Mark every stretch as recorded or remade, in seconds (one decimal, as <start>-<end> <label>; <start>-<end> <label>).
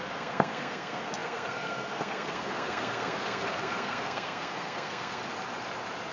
0.0-5.2 remade; 5.2-6.1 recorded